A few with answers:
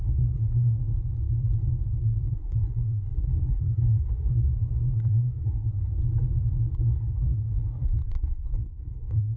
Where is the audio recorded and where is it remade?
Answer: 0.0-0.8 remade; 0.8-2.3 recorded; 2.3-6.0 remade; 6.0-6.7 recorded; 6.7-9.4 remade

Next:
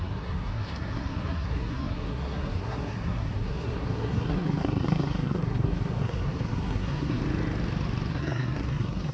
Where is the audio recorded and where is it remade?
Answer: 0.0-7.2 remade; 7.2-8.1 recorded; 8.1-9.1 remade

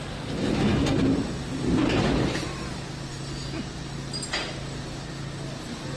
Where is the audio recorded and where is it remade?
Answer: 0.0-6.0 recorded